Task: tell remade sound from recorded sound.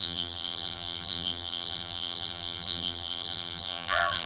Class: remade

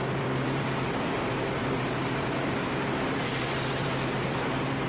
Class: remade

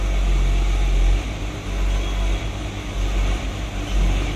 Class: recorded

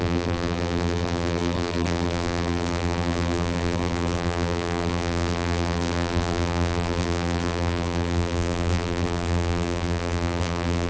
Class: remade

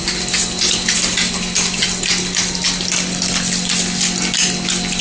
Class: recorded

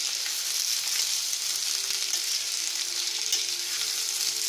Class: recorded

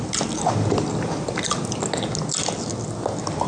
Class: recorded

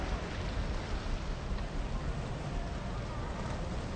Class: recorded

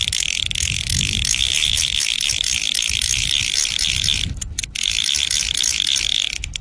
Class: recorded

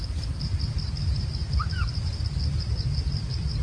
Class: recorded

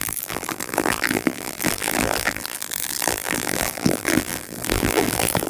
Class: remade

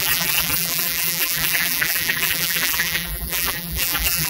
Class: remade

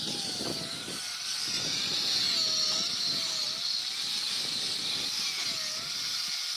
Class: recorded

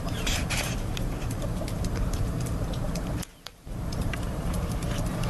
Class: remade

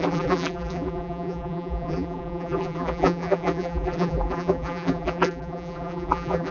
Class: remade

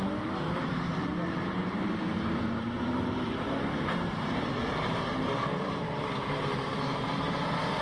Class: remade